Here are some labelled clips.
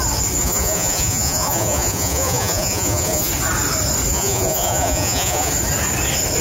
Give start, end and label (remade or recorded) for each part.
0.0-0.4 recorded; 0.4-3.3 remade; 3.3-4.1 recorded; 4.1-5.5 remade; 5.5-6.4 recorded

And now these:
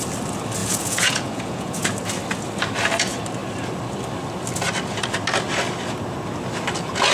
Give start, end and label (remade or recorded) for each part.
0.0-0.6 recorded; 0.6-1.9 remade; 1.9-7.1 recorded

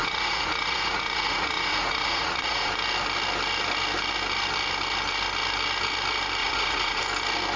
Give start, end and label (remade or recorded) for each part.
0.0-2.7 remade; 2.7-6.4 recorded; 6.4-7.0 remade; 7.0-7.6 recorded

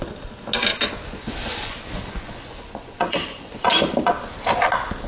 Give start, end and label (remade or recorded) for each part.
0.0-0.7 recorded; 0.7-3.8 remade; 3.8-5.1 recorded

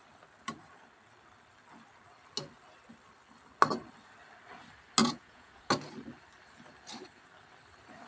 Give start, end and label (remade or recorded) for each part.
0.0-5.0 recorded; 5.0-5.7 remade; 5.7-8.1 recorded

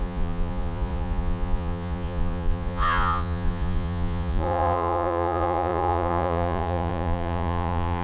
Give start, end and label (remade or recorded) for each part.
0.0-8.0 remade